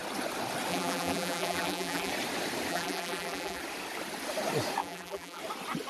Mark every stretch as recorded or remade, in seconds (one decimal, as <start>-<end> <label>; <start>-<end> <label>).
0.0-0.7 recorded; 0.7-2.1 remade; 2.1-2.7 recorded; 2.7-3.6 remade; 3.6-4.8 recorded; 4.8-5.4 remade; 5.4-5.9 recorded